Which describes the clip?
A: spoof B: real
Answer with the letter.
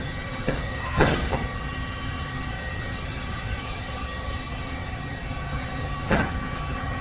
A